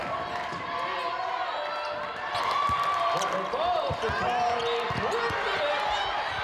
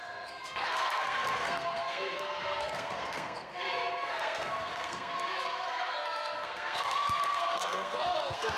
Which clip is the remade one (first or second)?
second